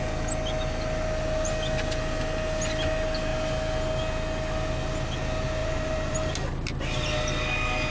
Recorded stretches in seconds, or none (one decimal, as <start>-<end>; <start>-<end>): 0.0-5.6; 6.3-7.9